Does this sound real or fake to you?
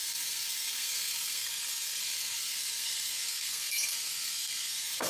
fake